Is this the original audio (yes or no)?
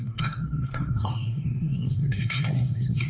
no